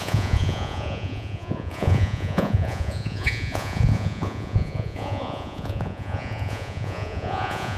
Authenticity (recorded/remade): remade